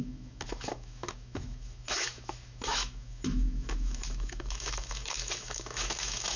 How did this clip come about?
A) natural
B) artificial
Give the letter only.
B